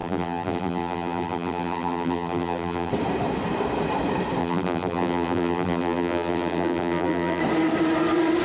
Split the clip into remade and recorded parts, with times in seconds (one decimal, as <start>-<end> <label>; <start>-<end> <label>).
0.0-2.9 remade; 2.9-4.4 recorded; 4.4-7.4 remade; 7.4-8.4 recorded